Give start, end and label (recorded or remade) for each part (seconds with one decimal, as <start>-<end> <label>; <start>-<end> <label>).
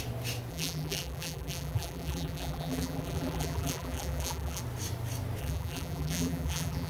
0.0-0.5 recorded; 0.5-4.6 remade; 4.6-5.4 recorded; 5.4-6.9 remade